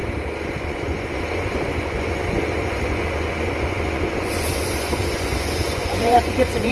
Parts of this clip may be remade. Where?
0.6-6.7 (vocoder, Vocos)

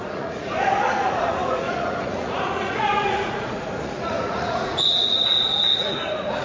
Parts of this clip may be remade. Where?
0.0-6.4 (vocoder, Vocos)

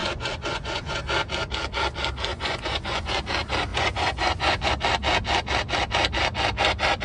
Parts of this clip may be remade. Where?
0.0-1.0 (vocoder, Vocos); 2.3-3.1; 3.7-4.7